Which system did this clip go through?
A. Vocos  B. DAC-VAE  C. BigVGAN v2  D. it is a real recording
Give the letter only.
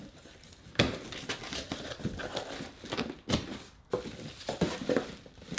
D